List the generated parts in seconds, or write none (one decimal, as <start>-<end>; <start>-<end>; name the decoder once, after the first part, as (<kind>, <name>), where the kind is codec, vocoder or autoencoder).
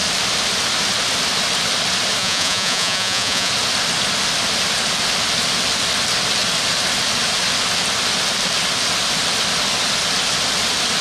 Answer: 2.2-3.5 (vocoder, Vocos)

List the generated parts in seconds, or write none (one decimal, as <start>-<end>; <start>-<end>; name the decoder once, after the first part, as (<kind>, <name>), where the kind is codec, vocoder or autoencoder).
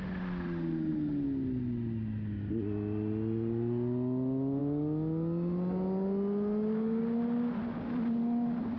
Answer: none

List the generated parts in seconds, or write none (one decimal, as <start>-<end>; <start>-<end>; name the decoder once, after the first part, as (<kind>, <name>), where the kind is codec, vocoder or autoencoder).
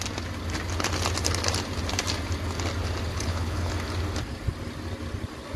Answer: 3.1-3.7 (codec, HILCodec)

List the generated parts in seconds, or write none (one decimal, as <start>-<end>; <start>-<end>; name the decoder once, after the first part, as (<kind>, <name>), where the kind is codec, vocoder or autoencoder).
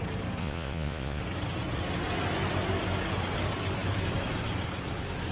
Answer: 0.4-1.2 (vocoder, Vocos)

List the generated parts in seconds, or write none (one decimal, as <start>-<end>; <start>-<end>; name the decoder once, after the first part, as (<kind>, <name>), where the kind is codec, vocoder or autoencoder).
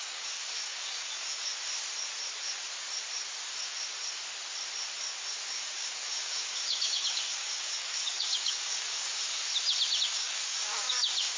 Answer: 0.0-1.5 (codec, DAC); 5.5-9.5; 10.0-11.4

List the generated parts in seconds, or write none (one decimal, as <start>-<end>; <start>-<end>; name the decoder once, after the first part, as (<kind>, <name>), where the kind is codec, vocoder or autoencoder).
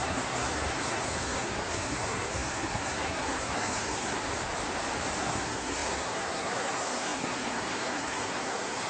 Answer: 0.0-4.2 (codec, SNAC); 5.2-8.9